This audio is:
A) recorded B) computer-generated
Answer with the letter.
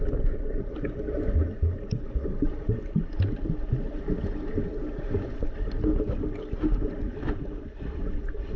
A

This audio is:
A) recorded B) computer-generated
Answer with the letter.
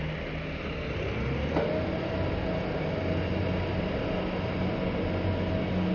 A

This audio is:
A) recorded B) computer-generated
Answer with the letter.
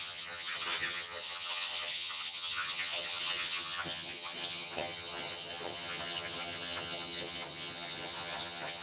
B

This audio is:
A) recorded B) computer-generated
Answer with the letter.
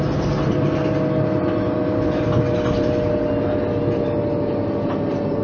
A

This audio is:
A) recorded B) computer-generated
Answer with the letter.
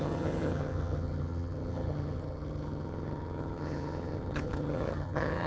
B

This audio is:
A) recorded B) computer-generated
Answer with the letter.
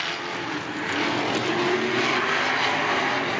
A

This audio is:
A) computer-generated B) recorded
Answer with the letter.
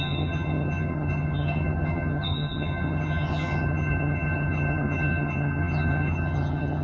A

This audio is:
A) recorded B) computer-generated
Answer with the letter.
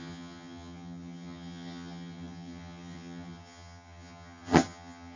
B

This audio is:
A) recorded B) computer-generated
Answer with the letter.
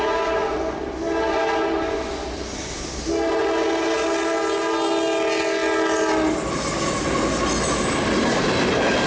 A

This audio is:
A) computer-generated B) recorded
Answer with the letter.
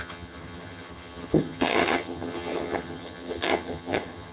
A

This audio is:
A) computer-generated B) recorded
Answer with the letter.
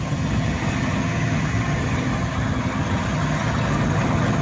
A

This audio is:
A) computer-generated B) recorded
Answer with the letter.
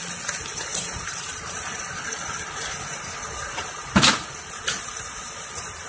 B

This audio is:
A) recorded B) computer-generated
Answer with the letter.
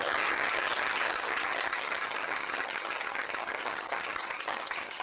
B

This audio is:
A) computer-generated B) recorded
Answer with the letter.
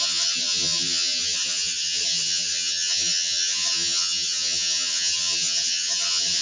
A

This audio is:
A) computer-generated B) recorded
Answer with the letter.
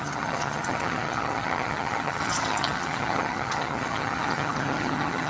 A